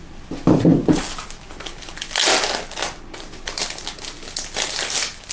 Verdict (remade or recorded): recorded